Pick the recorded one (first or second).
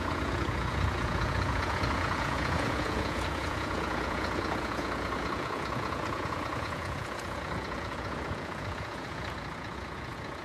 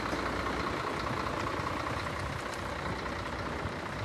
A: second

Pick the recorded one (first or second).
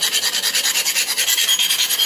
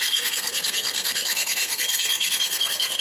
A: first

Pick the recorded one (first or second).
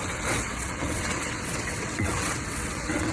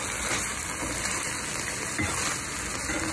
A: second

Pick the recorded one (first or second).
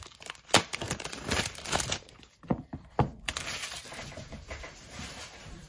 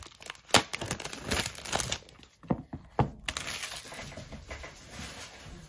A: second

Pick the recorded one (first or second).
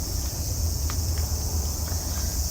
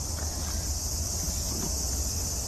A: second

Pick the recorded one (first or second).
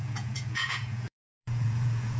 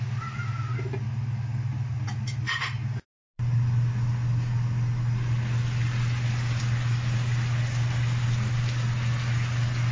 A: second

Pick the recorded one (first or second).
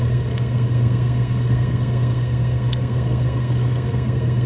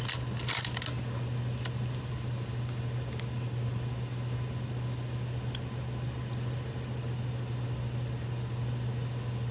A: second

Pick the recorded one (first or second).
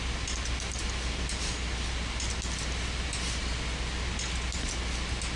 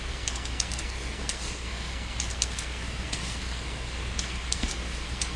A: first